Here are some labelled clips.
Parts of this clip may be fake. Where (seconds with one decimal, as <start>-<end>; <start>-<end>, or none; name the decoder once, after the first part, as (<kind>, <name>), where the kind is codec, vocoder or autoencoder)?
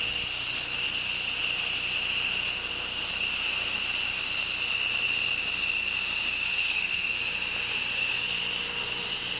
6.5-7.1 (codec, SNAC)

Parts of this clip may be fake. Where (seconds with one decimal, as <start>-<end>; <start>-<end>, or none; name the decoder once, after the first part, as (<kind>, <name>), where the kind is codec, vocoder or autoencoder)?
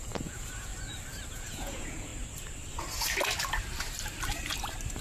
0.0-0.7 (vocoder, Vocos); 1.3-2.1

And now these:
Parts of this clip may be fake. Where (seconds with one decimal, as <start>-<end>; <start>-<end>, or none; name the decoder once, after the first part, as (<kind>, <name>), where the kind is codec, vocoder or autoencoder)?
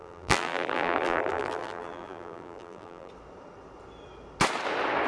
0.0-3.1 (vocoder, BigVGAN v2)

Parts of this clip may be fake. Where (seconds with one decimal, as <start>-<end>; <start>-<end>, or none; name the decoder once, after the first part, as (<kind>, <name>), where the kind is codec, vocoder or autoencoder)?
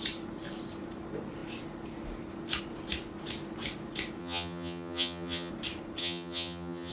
4.2-5.5 (vocoder, HiFi-GAN); 6.0-6.9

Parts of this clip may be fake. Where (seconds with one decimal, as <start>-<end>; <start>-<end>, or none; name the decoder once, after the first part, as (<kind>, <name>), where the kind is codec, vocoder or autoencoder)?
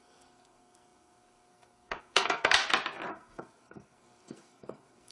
0.0-2.6 (codec, SNAC); 3.1-5.1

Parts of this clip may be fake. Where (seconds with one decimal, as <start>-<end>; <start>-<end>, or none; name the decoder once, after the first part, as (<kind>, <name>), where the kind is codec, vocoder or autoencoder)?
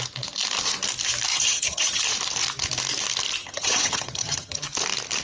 1.3-2.0 (vocoder, HiFi-GAN); 3.4-4.6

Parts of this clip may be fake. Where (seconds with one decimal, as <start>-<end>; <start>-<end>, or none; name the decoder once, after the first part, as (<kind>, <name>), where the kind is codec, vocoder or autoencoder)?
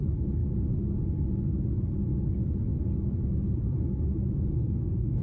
4.6-5.2 (codec, SNAC)